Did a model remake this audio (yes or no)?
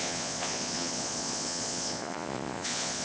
yes